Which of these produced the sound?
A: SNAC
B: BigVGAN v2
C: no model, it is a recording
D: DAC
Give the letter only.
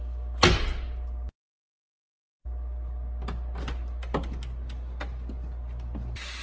C